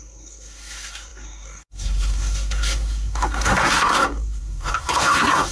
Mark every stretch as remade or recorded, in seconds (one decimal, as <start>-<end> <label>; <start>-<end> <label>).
0.0-5.5 remade